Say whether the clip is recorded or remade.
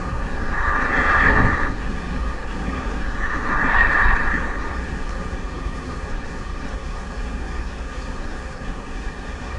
remade